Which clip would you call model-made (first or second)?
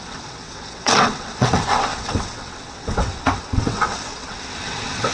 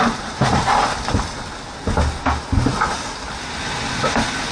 first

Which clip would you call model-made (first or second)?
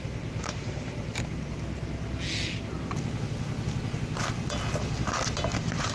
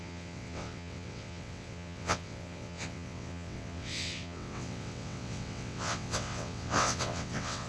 second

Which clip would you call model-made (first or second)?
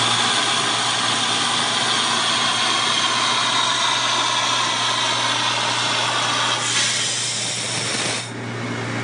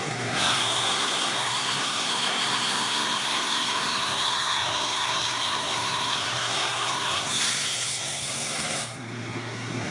second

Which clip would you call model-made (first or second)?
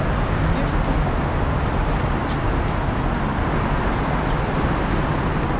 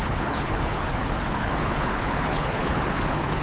second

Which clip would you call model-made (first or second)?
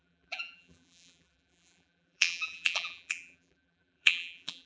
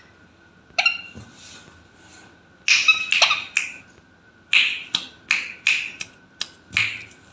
first